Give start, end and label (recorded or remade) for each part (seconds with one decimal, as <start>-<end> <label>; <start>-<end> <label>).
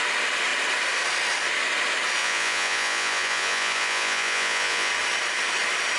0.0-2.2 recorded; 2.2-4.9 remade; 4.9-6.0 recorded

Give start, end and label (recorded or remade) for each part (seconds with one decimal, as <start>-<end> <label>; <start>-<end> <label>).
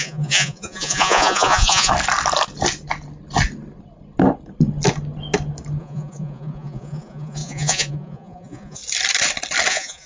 0.0-1.9 remade; 1.9-5.8 recorded; 5.8-8.8 remade; 8.8-9.7 recorded; 9.7-10.1 remade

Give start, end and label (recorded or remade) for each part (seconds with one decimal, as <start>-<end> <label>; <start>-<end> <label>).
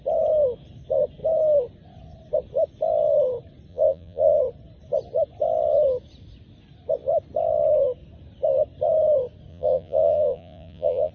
0.0-3.7 recorded; 3.7-4.4 remade; 4.4-9.5 recorded; 9.5-11.1 remade